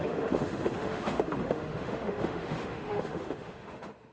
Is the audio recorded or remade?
remade